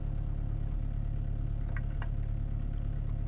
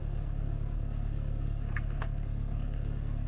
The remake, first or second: second